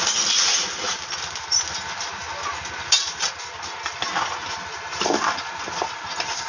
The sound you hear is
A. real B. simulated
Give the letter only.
A